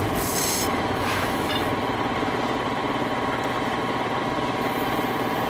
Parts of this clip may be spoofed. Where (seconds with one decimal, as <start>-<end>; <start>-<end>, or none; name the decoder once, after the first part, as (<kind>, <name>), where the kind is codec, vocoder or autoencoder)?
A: 0.7-1.5 (autoencoder, DAC-VAE)